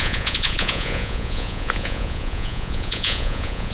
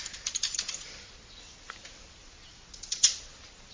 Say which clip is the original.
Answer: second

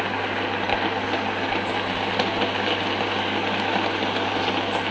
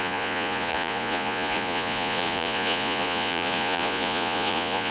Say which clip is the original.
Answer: first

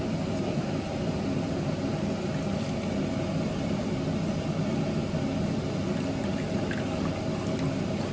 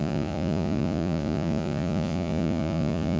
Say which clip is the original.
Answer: first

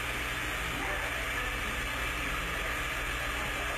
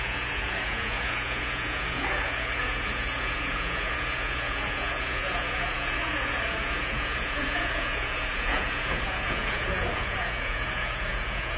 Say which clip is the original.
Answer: first